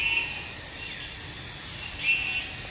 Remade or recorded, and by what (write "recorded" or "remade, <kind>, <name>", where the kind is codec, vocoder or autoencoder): recorded